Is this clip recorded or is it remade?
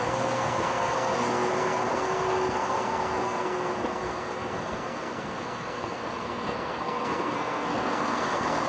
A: remade